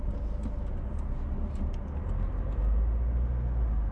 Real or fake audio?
real